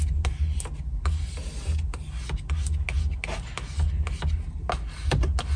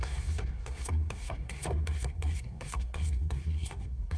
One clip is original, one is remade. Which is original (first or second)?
first